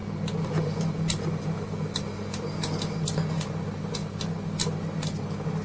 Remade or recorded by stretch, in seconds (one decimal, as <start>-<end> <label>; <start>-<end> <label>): 0.0-5.6 recorded